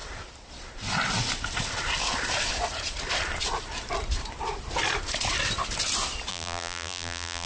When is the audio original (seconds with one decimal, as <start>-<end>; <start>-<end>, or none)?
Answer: 0.0-6.3